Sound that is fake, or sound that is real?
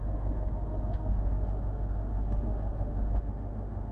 fake